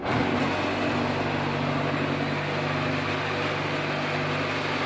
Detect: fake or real real